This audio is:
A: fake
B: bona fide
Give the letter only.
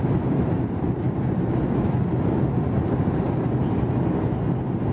B